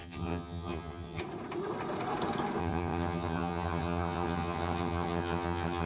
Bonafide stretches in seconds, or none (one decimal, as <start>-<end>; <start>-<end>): 1.2-2.6